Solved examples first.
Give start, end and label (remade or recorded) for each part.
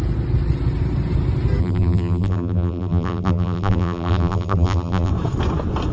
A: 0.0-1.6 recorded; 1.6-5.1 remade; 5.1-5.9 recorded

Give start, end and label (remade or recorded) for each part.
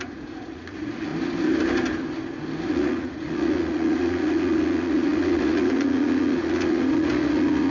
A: 0.0-1.1 remade; 1.1-2.7 recorded; 2.7-7.7 remade